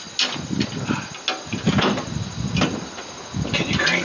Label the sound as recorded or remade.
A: recorded